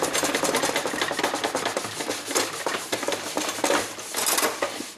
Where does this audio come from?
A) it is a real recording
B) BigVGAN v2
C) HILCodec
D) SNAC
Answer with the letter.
A